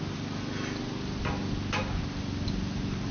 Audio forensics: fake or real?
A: real